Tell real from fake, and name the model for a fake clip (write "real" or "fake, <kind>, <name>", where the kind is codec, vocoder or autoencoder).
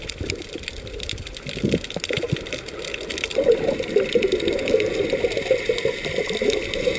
real